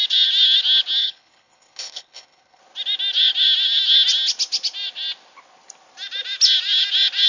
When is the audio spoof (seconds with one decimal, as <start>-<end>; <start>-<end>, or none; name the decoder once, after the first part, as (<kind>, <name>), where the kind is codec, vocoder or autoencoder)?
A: 1.0-2.6 (codec, HILCodec)